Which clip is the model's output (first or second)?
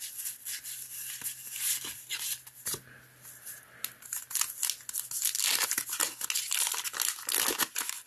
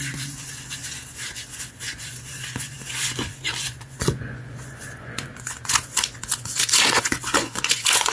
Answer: second